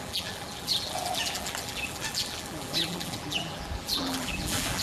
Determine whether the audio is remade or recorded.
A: remade